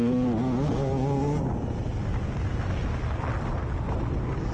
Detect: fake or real real